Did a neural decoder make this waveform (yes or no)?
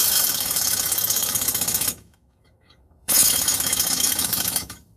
yes